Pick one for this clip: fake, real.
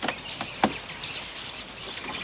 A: real